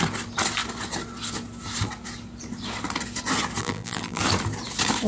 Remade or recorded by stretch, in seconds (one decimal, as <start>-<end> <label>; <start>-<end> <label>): 0.0-3.6 recorded; 3.6-4.2 remade; 4.2-5.1 recorded